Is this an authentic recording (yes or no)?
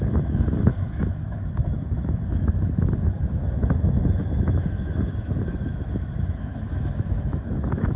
no